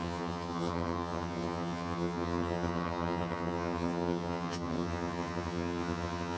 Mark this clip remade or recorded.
remade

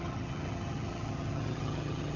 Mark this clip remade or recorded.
remade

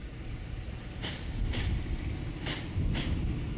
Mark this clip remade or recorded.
recorded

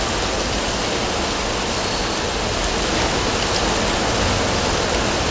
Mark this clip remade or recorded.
recorded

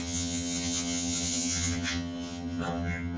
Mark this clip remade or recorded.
remade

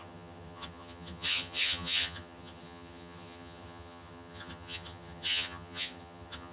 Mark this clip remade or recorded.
remade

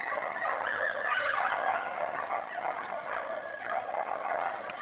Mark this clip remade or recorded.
remade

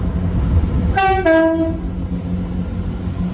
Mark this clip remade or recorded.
recorded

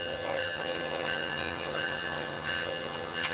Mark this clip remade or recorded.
remade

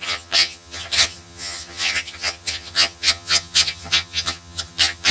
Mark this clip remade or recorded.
remade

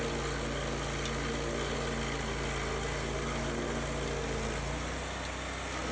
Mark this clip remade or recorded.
recorded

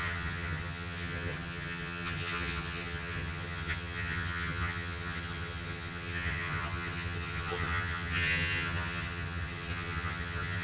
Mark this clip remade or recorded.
remade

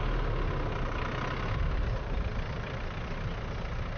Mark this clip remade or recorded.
recorded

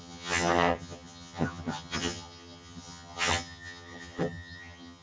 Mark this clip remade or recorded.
remade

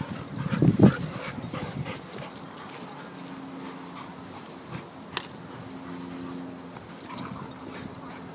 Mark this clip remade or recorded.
recorded